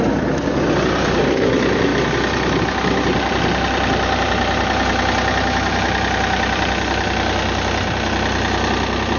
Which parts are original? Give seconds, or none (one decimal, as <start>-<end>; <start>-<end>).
0.0-9.2

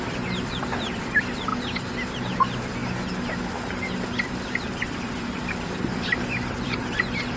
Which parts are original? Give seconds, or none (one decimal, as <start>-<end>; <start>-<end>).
2.8-4.6